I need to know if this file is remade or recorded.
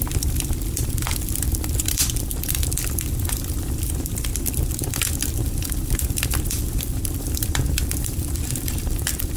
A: remade